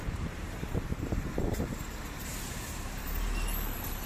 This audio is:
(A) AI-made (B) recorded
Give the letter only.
A